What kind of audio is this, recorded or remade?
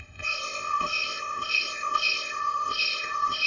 remade